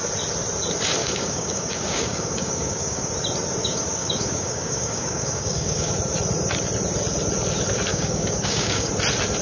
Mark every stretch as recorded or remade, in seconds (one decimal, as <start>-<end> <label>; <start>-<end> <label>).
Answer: 0.0-1.0 recorded; 1.0-3.1 remade; 3.1-3.6 recorded; 3.6-5.9 remade; 5.9-7.9 recorded; 7.9-8.9 remade; 8.9-9.4 recorded